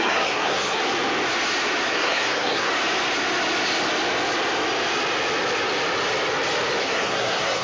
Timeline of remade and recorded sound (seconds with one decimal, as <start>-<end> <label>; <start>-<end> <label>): 0.0-0.8 remade; 0.8-1.9 recorded; 1.9-2.7 remade; 2.7-6.8 recorded; 6.8-7.6 remade